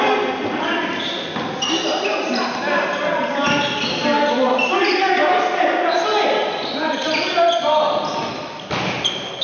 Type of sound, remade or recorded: recorded